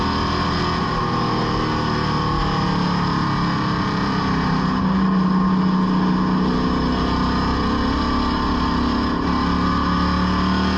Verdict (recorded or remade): recorded